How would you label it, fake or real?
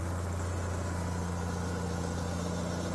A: real